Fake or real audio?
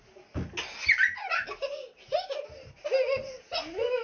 real